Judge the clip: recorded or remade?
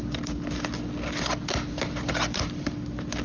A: recorded